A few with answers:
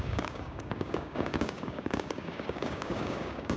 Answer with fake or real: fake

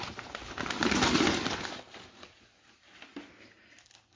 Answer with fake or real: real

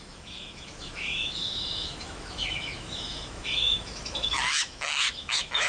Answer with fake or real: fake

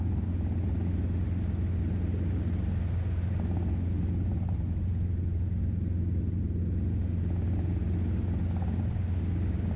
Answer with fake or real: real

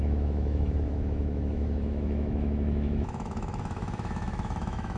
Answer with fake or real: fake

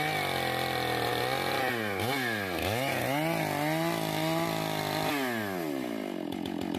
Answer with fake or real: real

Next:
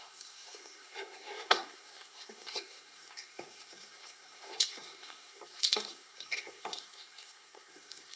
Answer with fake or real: fake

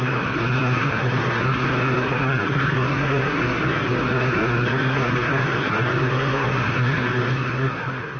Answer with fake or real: fake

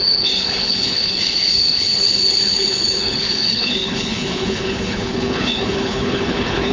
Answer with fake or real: fake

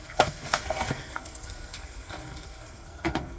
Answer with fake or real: fake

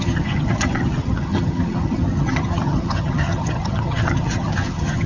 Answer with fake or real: fake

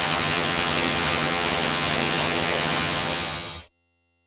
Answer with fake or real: fake